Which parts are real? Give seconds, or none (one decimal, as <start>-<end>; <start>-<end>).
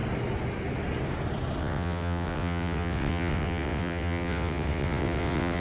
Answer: 0.0-1.6